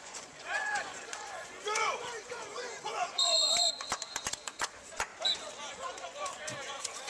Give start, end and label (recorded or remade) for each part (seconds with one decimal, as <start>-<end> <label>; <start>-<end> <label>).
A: 0.0-5.1 remade; 5.1-5.7 recorded; 5.7-7.1 remade